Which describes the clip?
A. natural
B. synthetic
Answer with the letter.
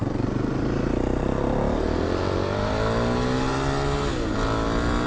A